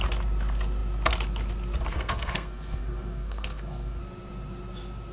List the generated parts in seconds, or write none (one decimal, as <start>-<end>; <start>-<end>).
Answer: 1.9-4.0